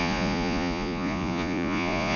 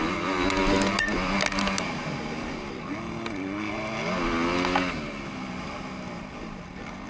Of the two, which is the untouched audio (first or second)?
second